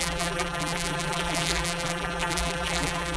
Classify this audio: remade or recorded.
remade